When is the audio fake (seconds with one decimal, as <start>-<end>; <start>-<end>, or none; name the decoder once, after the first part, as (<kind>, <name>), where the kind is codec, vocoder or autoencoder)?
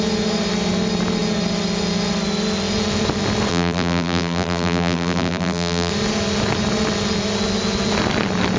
3.5-5.9 (vocoder, BigVGAN v2)